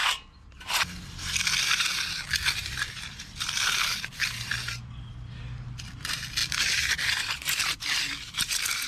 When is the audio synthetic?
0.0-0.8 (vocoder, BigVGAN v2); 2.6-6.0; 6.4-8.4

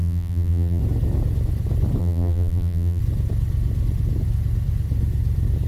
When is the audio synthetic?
0.0-0.8 (vocoder, BigVGAN v2); 2.0-3.0